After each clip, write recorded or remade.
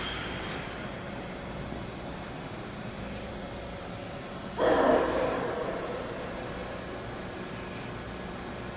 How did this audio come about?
remade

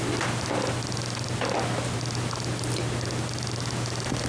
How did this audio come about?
recorded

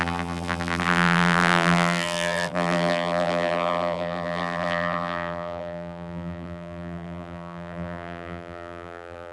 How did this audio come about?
remade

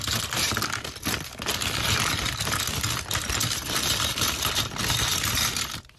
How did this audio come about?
recorded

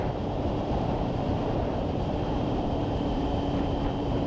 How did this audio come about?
remade